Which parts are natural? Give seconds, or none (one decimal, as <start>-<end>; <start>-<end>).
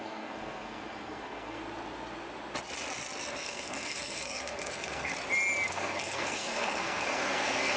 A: 1.6-3.4; 5.1-5.7